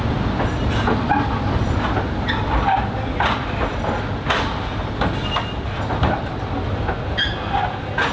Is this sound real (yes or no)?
yes